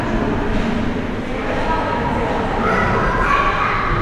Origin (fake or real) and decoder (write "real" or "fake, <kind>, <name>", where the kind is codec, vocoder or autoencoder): real